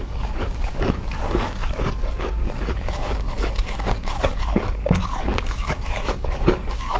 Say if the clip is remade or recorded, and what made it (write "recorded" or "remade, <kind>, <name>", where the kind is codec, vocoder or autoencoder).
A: remade, codec, DAC